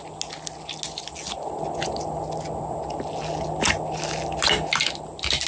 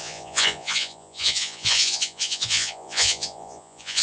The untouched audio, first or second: first